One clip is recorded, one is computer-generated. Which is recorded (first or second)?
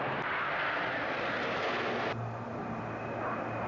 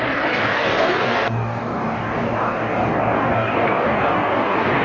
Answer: first